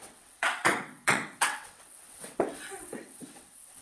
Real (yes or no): no